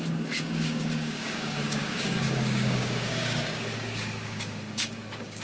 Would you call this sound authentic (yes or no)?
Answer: no